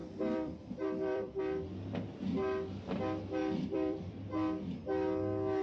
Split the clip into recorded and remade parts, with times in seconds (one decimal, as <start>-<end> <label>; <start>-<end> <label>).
0.0-1.4 remade; 1.4-3.4 recorded; 3.4-4.1 remade; 4.1-5.6 recorded